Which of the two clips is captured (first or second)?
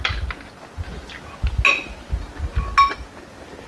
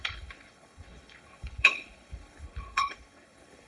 first